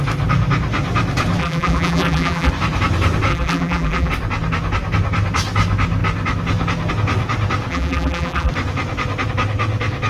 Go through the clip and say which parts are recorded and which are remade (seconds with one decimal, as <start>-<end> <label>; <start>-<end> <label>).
0.0-1.4 recorded; 1.4-2.5 remade; 2.5-3.3 recorded; 3.3-4.1 remade; 4.1-7.7 recorded; 7.7-8.5 remade; 8.5-10.1 recorded